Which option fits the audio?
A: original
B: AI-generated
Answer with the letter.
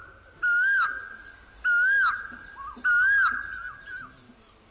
A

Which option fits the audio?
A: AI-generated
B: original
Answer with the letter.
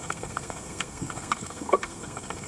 A